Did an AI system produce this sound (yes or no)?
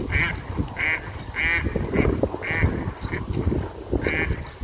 no